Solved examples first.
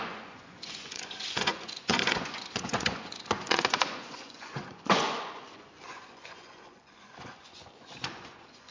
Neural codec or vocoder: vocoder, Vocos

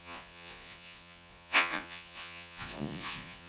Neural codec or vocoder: vocoder, Vocos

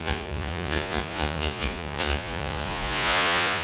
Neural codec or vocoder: vocoder, Vocos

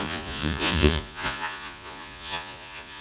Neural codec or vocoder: vocoder, Vocos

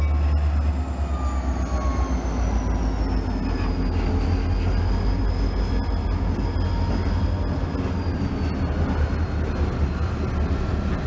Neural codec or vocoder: none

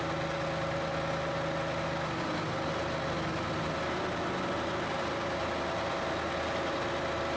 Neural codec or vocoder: none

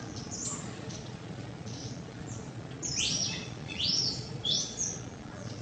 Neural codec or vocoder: vocoder, Vocos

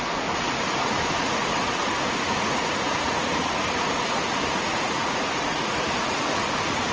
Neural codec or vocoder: vocoder, Vocos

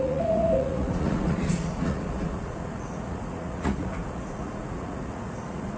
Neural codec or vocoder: vocoder, Vocos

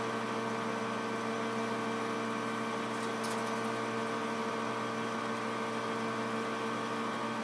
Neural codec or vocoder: none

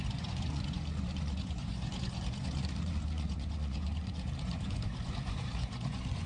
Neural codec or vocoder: vocoder, Vocos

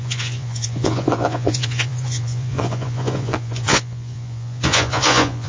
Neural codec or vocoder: vocoder, Vocos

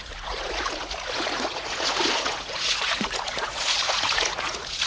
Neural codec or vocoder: vocoder, Vocos